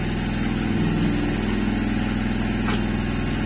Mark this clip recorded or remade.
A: recorded